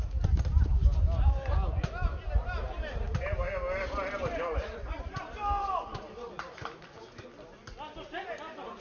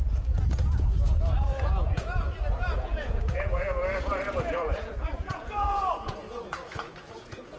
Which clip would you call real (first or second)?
first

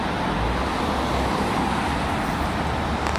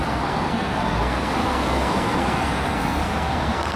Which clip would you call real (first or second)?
first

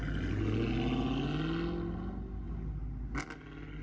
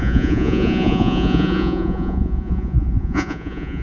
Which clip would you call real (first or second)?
first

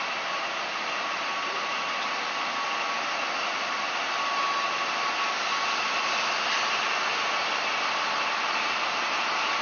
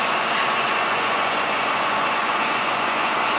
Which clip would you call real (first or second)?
first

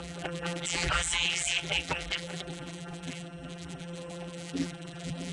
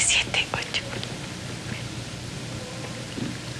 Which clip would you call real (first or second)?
second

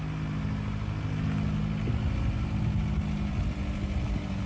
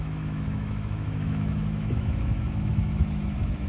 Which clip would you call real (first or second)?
first